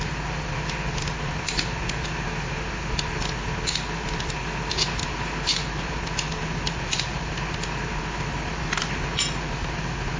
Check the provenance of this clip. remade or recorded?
recorded